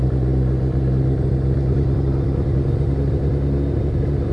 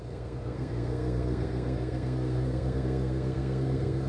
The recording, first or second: first